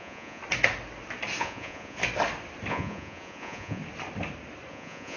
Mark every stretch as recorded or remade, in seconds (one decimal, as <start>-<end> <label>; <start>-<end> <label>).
0.0-0.4 remade; 0.4-1.4 recorded; 1.4-2.0 remade; 2.0-2.7 recorded; 2.7-3.8 remade; 3.8-4.7 recorded; 4.7-5.2 remade